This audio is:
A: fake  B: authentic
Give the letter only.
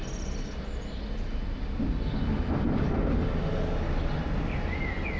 B